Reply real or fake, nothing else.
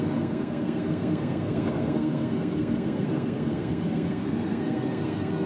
fake